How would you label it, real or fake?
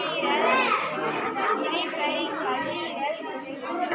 real